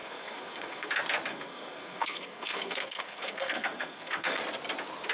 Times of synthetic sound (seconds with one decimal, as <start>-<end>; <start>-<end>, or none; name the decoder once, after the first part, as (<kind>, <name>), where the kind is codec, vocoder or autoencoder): 0.0-0.9 (codec, SNAC); 1.3-4.4